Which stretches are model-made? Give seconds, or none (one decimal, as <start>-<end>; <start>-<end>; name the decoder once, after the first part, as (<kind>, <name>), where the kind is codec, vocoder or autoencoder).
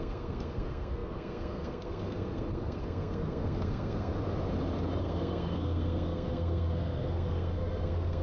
0.0-4.1 (codec, SNAC); 5.0-8.2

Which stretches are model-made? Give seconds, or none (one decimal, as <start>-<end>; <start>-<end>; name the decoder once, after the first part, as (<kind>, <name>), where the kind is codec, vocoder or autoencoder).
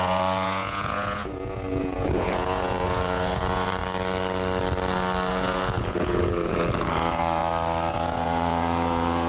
0.0-3.8 (vocoder, Vocos); 5.3-7.4; 7.9-9.3